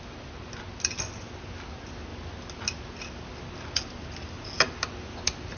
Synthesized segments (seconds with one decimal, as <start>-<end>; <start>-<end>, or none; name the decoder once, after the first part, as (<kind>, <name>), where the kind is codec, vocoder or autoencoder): none